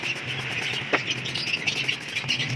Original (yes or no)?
yes